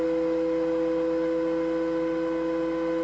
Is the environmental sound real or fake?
real